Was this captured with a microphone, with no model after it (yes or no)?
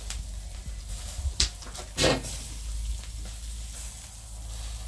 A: yes